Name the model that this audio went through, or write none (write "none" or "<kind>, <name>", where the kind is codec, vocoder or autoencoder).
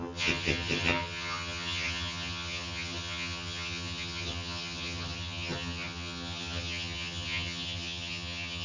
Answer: vocoder, HiFi-GAN